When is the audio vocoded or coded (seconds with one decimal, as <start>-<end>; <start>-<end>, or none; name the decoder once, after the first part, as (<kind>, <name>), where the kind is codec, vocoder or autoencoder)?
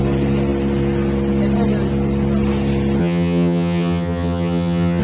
3.0-5.0 (vocoder, HiFi-GAN)